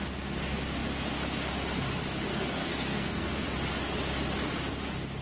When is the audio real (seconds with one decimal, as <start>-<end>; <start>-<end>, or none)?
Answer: 0.0-2.3; 3.4-5.2